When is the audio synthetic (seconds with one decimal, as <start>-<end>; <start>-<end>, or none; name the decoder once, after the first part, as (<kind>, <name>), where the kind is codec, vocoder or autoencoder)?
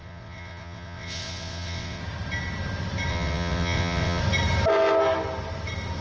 0.0-2.0 (vocoder, WaveNeXt); 3.1-4.2